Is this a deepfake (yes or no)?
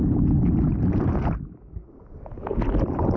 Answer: no